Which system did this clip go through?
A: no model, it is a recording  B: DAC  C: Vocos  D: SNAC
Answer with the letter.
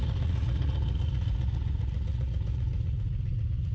C